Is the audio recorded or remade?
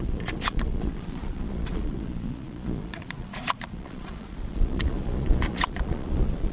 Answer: remade